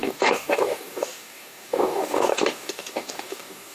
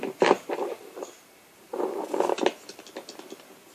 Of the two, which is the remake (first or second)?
first